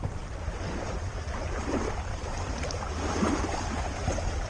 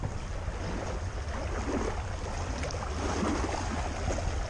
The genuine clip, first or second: second